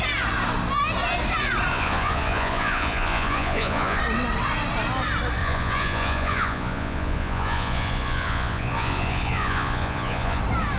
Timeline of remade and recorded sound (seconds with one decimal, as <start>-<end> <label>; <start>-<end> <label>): 0.0-1.7 recorded; 1.7-4.0 remade; 4.0-5.4 recorded; 5.4-10.4 remade; 10.4-10.8 recorded